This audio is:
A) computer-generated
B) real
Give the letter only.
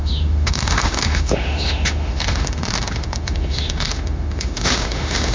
A